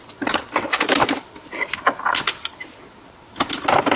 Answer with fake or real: real